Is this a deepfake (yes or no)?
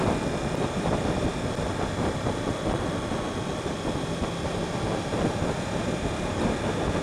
no